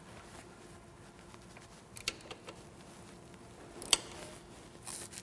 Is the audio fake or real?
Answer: real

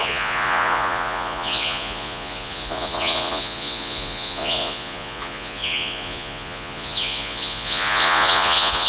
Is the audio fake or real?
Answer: fake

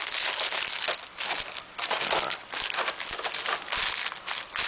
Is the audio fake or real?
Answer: real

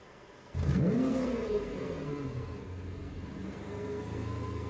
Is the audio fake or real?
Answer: fake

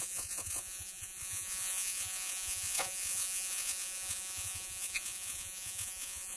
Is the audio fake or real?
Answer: fake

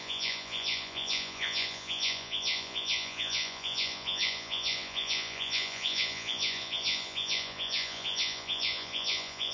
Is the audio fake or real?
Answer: fake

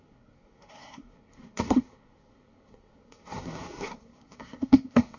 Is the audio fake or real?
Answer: fake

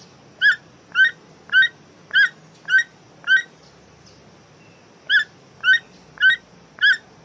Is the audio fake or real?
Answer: real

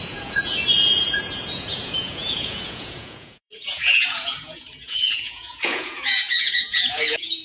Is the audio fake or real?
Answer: fake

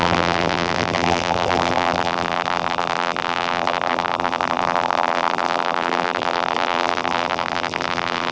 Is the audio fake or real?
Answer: fake